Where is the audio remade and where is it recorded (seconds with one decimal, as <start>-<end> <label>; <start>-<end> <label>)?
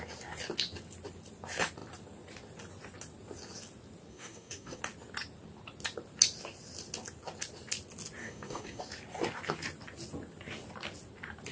0.0-4.1 recorded; 4.1-4.8 remade; 4.8-8.2 recorded; 8.2-8.8 remade; 8.8-11.5 recorded